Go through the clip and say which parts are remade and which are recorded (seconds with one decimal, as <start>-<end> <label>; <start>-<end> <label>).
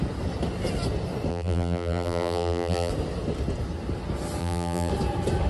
0.0-1.3 recorded; 1.3-2.9 remade; 2.9-4.4 recorded; 4.4-4.9 remade; 4.9-5.5 recorded